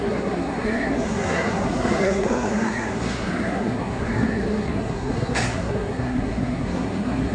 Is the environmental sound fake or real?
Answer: fake